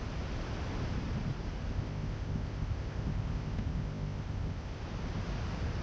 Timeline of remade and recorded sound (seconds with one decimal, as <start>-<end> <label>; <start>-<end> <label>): 0.0-1.7 recorded; 1.7-4.8 remade; 4.8-5.8 recorded